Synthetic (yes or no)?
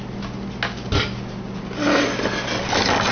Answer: no